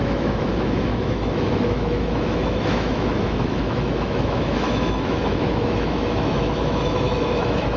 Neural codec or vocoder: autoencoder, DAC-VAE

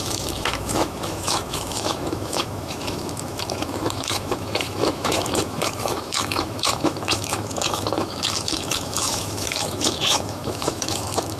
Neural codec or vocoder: autoencoder, DAC-VAE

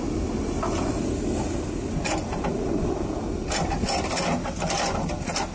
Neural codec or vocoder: none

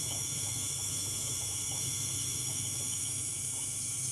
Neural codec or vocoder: autoencoder, DAC-VAE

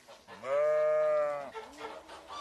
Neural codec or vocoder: none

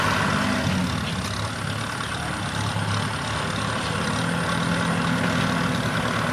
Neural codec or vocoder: none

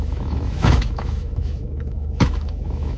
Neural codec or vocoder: autoencoder, DAC-VAE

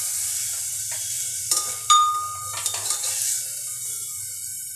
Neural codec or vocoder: none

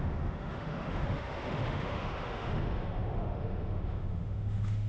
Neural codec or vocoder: autoencoder, DAC-VAE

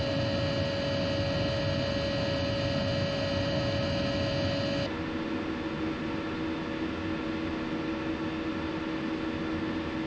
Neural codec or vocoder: none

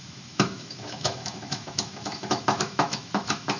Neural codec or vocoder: autoencoder, DAC-VAE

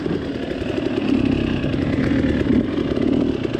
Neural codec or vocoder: none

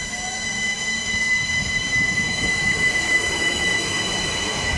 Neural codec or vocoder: autoencoder, DAC-VAE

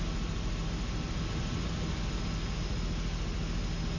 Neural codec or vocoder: none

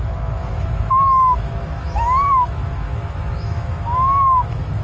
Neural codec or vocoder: autoencoder, DAC-VAE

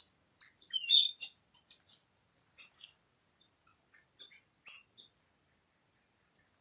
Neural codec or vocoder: none